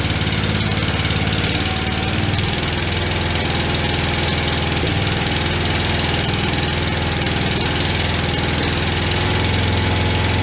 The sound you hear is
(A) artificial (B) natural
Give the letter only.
B